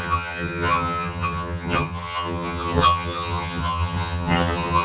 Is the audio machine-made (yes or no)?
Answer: yes